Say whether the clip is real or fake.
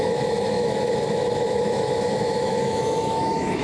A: fake